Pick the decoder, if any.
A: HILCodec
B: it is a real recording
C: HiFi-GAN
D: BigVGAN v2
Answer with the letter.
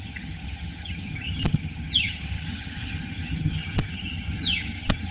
C